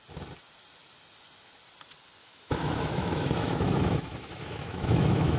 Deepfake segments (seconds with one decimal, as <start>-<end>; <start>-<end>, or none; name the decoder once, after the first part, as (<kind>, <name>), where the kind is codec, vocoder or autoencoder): 2.2-5.4 (autoencoder, DAC-VAE)